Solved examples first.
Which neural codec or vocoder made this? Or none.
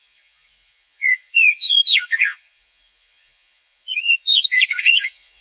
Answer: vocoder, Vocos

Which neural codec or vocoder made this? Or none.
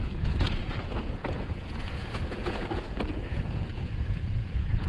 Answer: vocoder, Vocos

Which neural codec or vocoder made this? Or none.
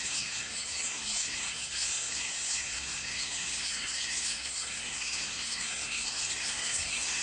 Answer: codec, SNAC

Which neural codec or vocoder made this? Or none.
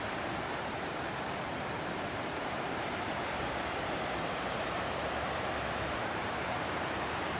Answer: vocoder, BigVGAN v2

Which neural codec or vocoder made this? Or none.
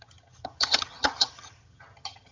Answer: vocoder, HiFi-GAN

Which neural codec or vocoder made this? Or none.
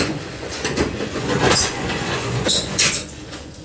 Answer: vocoder, Vocos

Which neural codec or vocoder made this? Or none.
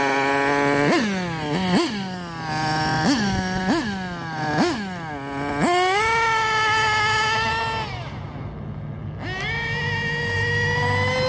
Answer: none